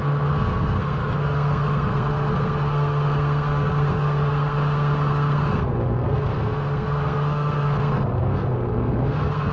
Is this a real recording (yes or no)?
no